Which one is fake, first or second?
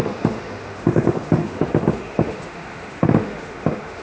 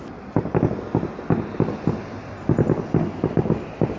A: first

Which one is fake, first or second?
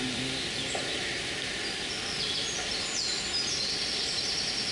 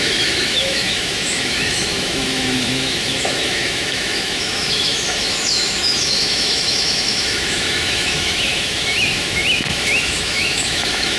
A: second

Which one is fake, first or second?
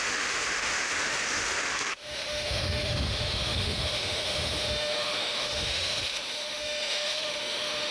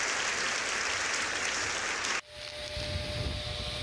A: first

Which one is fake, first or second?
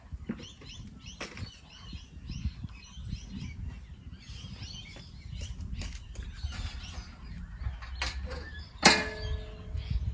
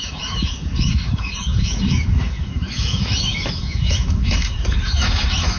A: second